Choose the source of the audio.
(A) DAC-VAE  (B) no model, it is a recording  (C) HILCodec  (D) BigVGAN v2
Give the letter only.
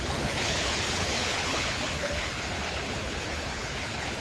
C